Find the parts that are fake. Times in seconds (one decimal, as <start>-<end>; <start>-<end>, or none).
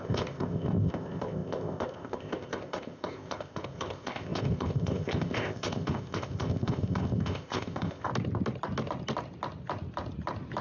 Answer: 0.0-8.1